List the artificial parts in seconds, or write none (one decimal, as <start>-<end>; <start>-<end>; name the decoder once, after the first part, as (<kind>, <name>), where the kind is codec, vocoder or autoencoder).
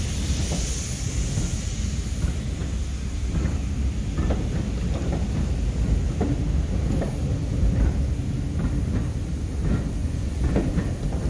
10.0-10.7 (vocoder, Vocos)